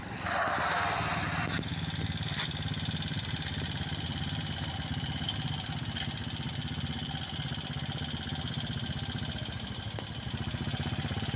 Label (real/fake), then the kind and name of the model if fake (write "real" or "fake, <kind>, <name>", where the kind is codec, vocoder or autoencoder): real